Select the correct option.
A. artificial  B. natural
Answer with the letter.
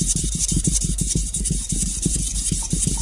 A